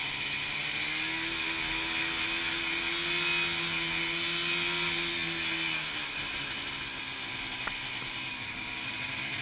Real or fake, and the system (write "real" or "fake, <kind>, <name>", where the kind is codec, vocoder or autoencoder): real